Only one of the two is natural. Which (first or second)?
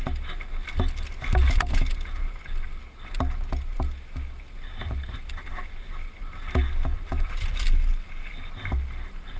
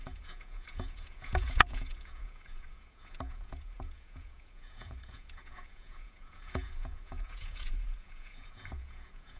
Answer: first